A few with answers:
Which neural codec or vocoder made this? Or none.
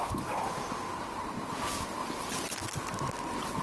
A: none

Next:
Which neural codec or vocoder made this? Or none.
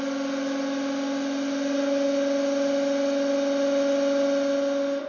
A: none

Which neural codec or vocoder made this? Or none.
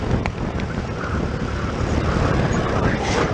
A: none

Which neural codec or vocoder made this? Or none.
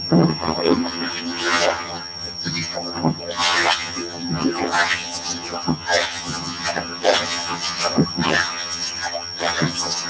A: vocoder, HiFi-GAN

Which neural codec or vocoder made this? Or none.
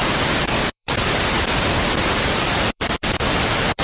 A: vocoder, BigVGAN v2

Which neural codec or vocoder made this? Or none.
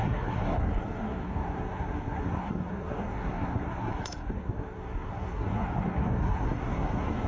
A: codec, SNAC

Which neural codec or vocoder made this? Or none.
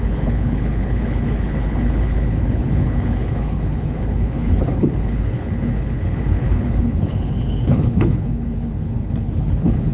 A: codec, HILCodec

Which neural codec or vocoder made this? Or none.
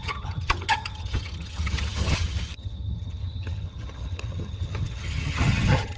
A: vocoder, HiFi-GAN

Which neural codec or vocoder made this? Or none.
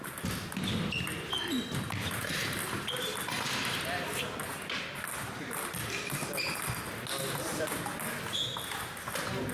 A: none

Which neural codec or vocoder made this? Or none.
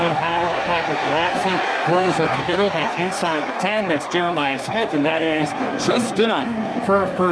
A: codec, SNAC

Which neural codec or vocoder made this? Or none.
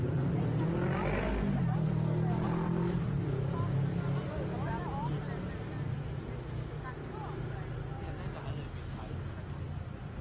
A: none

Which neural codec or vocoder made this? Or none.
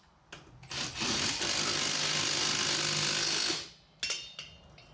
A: none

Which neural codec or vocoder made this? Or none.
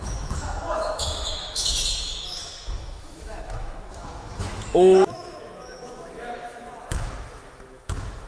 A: autoencoder, DAC-VAE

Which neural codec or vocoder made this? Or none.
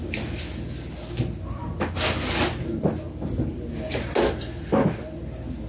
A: none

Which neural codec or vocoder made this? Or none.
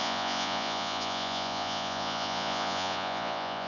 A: vocoder, Vocos